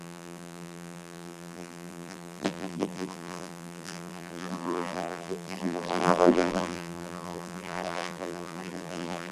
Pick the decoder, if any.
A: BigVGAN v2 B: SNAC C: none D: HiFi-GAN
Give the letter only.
A